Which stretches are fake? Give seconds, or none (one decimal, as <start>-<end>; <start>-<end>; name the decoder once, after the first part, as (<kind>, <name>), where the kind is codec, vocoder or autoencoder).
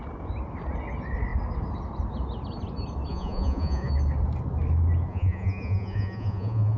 3.1-3.9 (vocoder, Vocos); 5.1-6.8